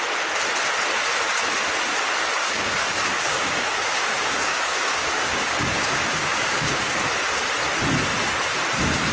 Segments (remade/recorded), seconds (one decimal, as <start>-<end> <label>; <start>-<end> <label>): 0.0-2.4 recorded; 2.4-7.0 remade; 7.0-9.1 recorded